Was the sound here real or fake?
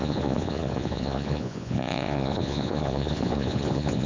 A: fake